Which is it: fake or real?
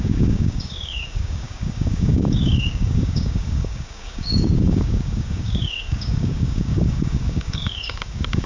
fake